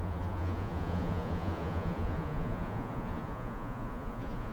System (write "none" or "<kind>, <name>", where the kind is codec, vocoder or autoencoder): vocoder, Vocos